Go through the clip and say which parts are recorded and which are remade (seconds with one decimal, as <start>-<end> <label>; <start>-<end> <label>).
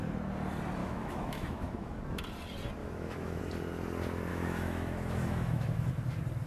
0.0-0.8 recorded; 0.8-2.0 remade; 2.0-2.8 recorded; 2.8-3.4 remade; 3.4-4.3 recorded; 4.3-5.9 remade; 5.9-6.5 recorded